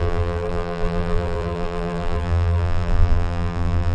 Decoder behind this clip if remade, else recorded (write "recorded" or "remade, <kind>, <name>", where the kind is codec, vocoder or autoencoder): remade, vocoder, BigVGAN v2